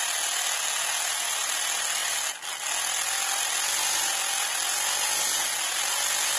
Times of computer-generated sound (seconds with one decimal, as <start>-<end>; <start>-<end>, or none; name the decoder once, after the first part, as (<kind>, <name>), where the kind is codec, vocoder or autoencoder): none